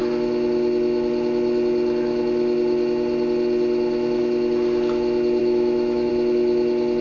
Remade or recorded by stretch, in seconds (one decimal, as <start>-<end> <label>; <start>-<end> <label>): 0.0-5.4 recorded; 5.4-6.1 remade; 6.1-7.0 recorded